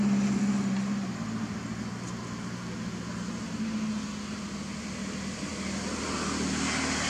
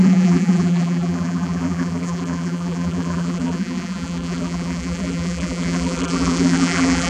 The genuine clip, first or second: first